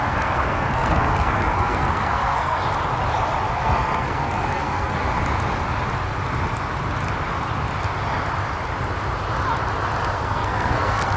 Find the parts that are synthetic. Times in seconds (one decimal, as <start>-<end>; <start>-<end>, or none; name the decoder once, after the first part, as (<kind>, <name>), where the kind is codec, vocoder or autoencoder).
0.0-2.6 (codec, SNAC); 3.5-5.0; 10.1-11.2